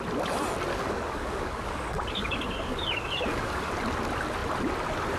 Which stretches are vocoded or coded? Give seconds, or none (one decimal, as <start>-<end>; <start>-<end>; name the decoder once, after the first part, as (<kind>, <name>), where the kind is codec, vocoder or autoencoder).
0.7-3.7 (codec, DAC)